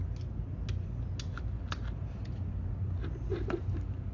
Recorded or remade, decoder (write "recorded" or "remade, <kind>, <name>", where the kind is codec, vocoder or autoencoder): recorded